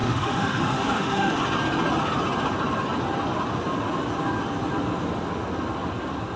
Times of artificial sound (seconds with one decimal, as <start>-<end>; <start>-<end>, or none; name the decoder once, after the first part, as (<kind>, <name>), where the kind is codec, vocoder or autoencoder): 0.0-1.4 (autoencoder, DAC-VAE)